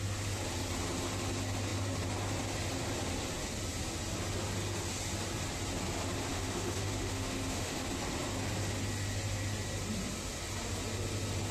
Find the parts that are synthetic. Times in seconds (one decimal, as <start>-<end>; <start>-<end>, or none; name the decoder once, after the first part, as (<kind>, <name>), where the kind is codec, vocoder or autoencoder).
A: 6.3-7.8 (autoencoder, DAC-VAE)